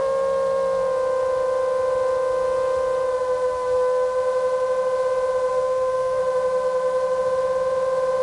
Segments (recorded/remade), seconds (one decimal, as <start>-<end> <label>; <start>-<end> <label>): 0.0-5.5 recorded; 5.5-6.2 remade; 6.2-8.2 recorded